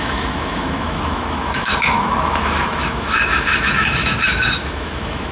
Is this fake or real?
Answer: fake